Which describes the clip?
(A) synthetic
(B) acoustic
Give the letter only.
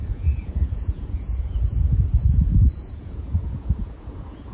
A